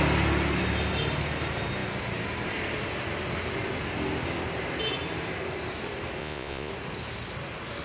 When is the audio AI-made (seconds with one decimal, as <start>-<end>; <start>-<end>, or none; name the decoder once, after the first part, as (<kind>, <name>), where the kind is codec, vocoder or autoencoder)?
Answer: 6.2-6.7 (vocoder, Vocos)